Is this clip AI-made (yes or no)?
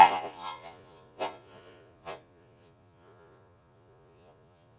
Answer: yes